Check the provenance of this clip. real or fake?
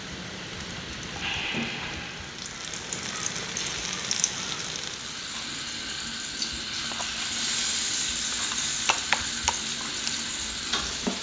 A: real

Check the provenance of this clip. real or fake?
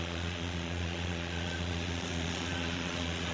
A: fake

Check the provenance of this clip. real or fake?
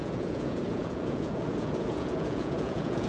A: fake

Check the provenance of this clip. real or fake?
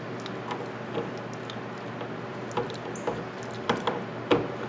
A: real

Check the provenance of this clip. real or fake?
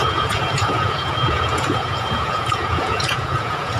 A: fake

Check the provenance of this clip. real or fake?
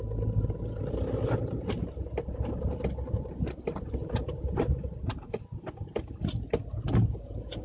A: real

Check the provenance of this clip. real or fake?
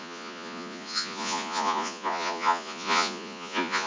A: fake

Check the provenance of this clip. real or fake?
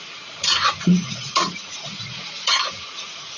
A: fake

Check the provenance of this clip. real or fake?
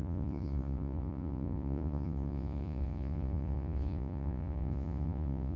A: fake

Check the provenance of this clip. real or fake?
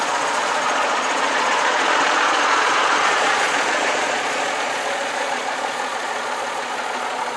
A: fake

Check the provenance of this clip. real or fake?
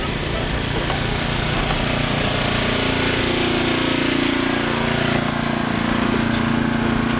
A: real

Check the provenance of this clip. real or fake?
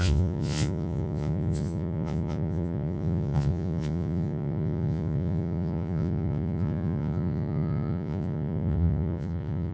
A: fake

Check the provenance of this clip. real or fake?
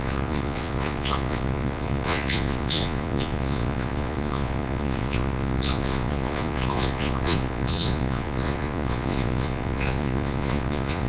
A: fake